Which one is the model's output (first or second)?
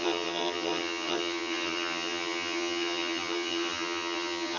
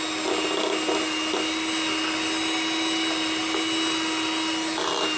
first